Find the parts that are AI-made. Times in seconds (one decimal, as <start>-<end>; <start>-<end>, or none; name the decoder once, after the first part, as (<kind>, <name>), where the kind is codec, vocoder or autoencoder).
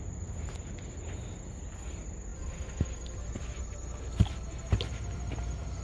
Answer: none